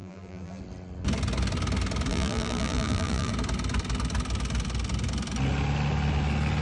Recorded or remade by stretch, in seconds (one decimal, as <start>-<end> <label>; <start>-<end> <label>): 0.0-0.6 remade; 0.6-2.1 recorded; 2.1-3.3 remade; 3.3-6.6 recorded